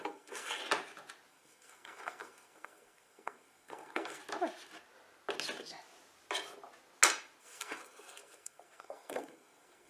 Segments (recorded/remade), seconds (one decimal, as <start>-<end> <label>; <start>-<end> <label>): 0.0-0.6 remade; 0.6-1.3 recorded; 1.3-4.2 remade; 4.2-7.4 recorded; 7.4-9.9 remade

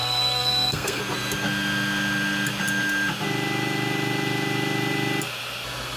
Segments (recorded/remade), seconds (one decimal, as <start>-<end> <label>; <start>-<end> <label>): 0.0-1.0 remade; 1.0-6.0 recorded

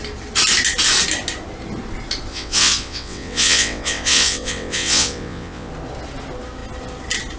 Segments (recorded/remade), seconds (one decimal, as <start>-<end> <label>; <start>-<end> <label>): 0.0-2.3 recorded; 2.3-5.7 remade; 5.7-7.4 recorded

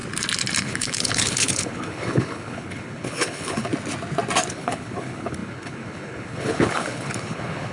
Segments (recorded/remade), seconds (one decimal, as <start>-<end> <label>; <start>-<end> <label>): 0.0-0.6 recorded; 0.6-3.7 remade; 3.7-4.5 recorded; 4.5-7.7 remade